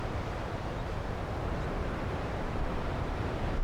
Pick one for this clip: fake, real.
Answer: fake